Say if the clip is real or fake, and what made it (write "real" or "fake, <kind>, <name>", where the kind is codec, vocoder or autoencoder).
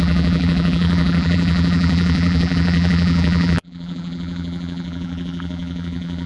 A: fake, vocoder, BigVGAN v2